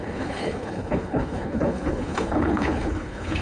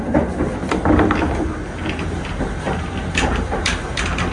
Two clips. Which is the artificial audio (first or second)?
first